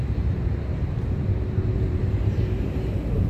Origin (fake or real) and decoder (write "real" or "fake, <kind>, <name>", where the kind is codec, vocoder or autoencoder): fake, vocoder, BigVGAN v2